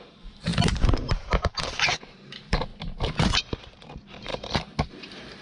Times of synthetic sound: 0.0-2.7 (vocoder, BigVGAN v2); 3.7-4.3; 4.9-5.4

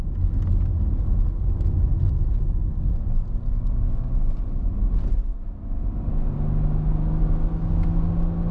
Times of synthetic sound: none

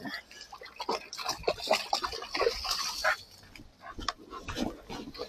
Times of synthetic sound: none

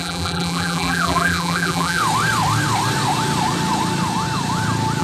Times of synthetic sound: 0.0-2.0 (vocoder, BigVGAN v2)

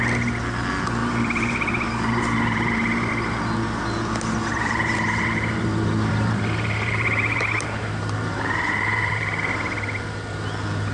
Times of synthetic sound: 1.0-3.1 (vocoder, BigVGAN v2); 4.5-9.3

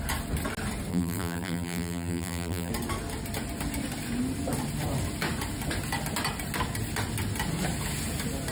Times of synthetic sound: 0.9-2.7 (vocoder, BigVGAN v2)

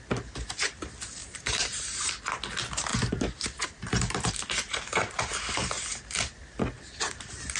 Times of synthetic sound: 1.2-2.1 (vocoder, BigVGAN v2); 2.9-4.3